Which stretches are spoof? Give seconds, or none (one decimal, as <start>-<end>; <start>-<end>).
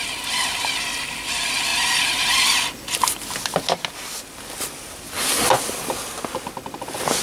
1.7-2.2